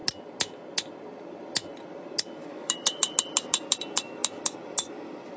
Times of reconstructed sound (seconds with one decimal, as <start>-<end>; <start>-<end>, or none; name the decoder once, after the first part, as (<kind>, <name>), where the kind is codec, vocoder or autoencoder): 2.5-3.1 (autoencoder, DAC-VAE)